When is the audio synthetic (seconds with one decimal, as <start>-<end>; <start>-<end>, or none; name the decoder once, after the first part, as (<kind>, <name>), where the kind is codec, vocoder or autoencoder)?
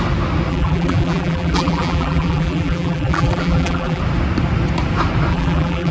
0.5-4.0 (vocoder, BigVGAN v2); 5.3-5.9